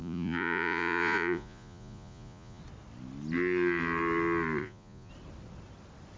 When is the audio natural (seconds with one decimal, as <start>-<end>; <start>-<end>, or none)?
2.6-4.6; 5.1-6.2